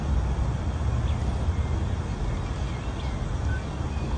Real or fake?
real